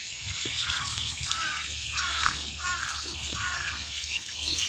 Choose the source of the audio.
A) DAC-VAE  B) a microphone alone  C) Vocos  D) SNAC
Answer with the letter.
D